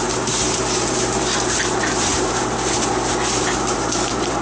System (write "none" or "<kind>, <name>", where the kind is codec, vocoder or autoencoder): vocoder, BigVGAN v2